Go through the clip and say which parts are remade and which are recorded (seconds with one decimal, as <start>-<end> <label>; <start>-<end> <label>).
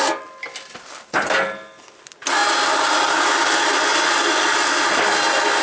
0.0-5.6 recorded